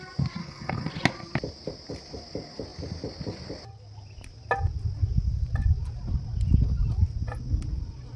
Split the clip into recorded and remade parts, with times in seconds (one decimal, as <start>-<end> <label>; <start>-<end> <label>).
0.0-0.4 recorded; 0.4-0.9 remade; 0.9-8.2 recorded